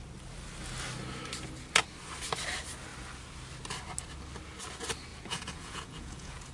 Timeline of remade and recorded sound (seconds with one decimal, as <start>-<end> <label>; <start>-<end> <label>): 0.0-5.1 recorded; 5.1-6.5 remade